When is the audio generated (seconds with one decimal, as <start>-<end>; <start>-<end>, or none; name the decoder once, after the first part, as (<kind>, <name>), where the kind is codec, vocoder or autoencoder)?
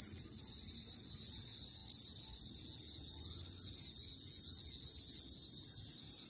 0.0-1.8 (vocoder, BigVGAN v2); 5.6-6.3